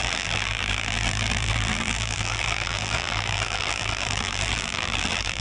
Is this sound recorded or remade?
remade